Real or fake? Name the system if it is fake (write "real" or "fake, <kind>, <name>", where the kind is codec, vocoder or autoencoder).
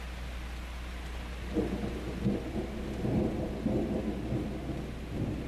real